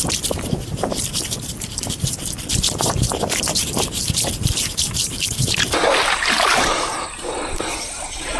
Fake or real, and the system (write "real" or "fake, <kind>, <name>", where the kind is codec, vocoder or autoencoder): fake, vocoder, BigVGAN v2